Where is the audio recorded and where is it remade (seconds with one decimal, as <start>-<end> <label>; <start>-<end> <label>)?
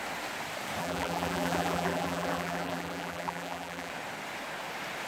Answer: 0.0-0.8 recorded; 0.8-3.9 remade; 3.9-5.1 recorded